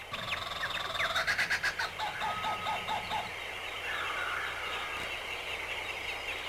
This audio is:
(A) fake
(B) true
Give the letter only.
B